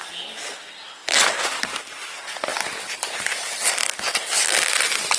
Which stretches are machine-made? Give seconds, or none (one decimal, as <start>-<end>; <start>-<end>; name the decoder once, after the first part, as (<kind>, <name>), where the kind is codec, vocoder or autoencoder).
none